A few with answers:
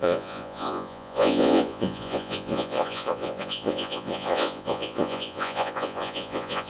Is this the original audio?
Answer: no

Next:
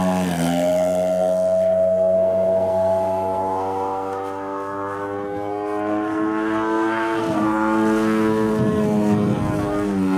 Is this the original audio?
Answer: no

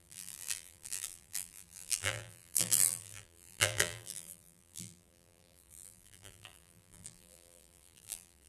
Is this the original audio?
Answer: no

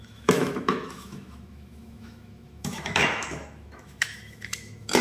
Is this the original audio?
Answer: no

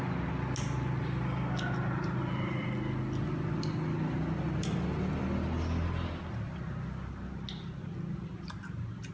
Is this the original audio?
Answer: yes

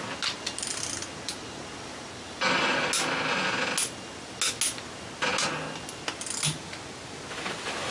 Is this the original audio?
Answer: yes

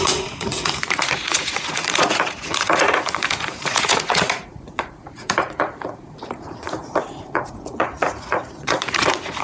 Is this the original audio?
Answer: no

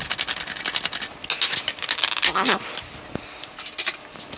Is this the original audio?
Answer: yes